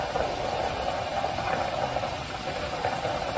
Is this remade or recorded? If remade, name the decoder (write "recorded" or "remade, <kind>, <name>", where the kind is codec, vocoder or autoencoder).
recorded